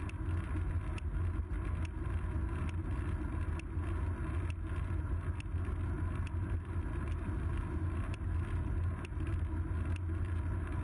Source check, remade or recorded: recorded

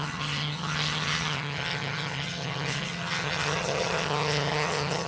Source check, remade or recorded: remade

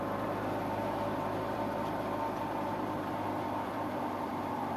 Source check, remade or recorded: remade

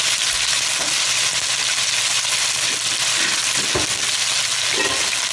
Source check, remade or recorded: recorded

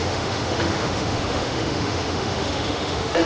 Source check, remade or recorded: remade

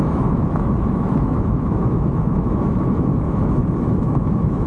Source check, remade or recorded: remade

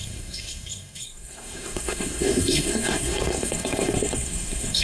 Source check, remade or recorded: remade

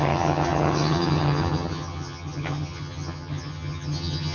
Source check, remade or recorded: remade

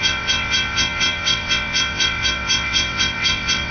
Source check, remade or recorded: remade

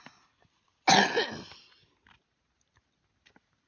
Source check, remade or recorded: recorded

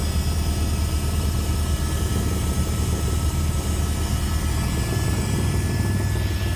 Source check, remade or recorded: recorded